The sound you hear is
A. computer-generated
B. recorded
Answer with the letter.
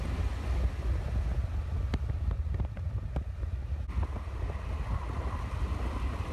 B